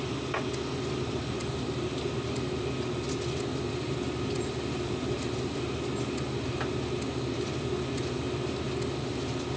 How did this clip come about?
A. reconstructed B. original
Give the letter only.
B